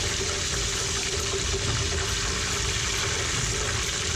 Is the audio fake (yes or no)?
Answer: no